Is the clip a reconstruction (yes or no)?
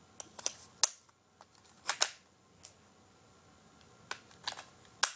no